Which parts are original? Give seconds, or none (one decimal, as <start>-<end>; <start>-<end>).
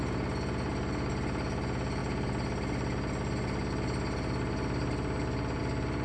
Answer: 0.0-6.0